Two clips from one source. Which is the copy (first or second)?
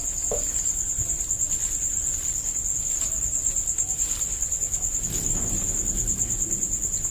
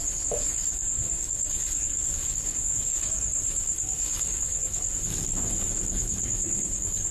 second